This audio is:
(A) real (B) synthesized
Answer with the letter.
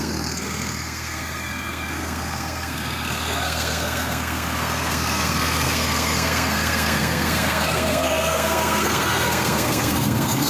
B